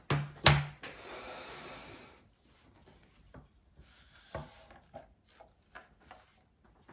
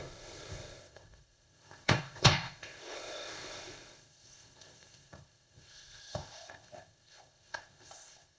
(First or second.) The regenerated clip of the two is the second